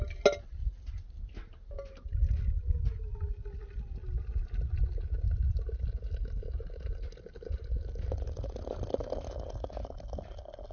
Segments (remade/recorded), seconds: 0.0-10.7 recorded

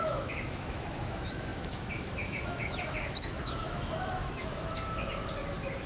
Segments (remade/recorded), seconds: 0.0-5.2 remade; 5.2-5.9 recorded